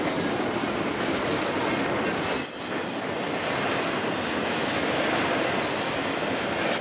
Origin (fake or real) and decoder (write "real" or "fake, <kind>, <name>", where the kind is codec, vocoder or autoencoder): real